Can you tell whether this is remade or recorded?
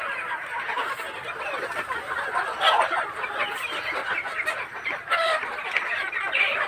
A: recorded